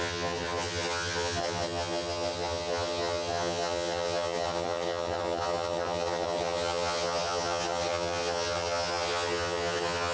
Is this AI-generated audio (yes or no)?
yes